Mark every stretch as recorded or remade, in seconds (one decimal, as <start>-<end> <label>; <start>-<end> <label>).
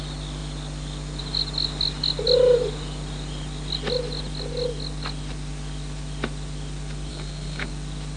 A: 0.0-7.1 recorded; 7.1-7.7 remade; 7.7-8.2 recorded